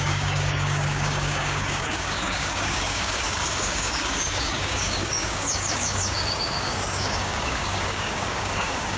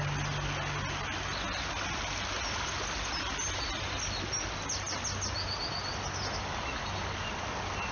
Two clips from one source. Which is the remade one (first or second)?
first